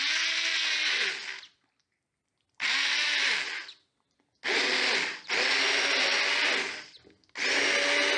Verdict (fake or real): real